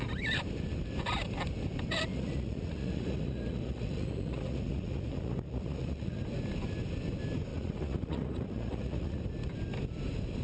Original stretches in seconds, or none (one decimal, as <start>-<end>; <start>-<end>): 0.0-2.1; 6.2-7.5; 9.2-10.4

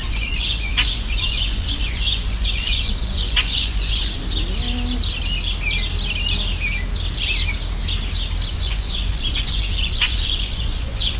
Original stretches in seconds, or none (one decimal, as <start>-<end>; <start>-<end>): 4.2-8.5